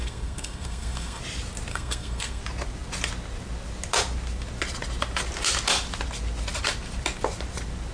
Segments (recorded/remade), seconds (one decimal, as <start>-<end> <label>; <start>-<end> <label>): 0.0-1.2 remade; 1.2-1.7 recorded; 1.7-2.4 remade; 2.4-7.9 recorded